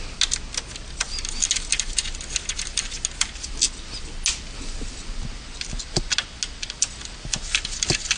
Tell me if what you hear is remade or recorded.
recorded